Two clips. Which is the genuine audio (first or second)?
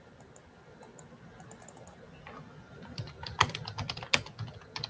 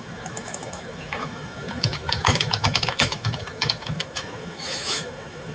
first